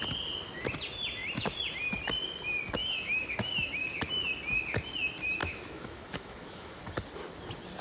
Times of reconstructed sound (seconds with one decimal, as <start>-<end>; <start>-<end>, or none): 2.8-3.8; 5.4-6.8